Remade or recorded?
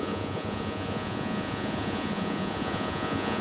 remade